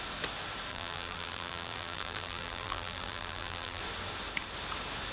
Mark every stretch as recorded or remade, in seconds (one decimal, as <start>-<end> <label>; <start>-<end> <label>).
0.0-0.7 recorded; 0.7-3.8 remade; 3.8-5.1 recorded